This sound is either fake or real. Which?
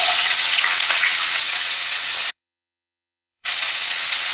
fake